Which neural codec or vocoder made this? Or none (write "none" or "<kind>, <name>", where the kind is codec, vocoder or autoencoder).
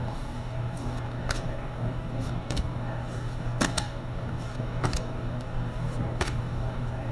codec, DAC